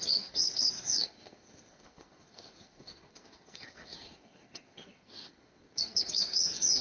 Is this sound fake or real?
fake